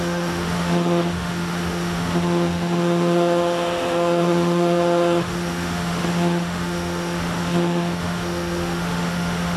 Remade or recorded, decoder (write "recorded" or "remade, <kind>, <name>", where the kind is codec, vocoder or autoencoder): remade, autoencoder, DAC-VAE